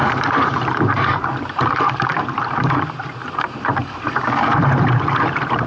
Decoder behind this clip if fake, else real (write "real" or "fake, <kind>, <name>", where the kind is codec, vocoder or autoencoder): fake, vocoder, BigVGAN v2